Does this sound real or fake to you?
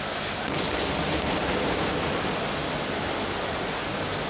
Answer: real